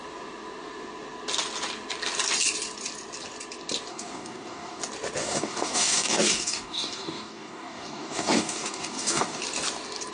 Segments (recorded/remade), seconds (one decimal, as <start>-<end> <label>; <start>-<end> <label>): 0.0-3.9 recorded; 3.9-4.8 remade; 4.8-5.2 recorded; 5.2-9.4 remade; 9.4-10.1 recorded